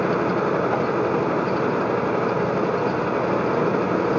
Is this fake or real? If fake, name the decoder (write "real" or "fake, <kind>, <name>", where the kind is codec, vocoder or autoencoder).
real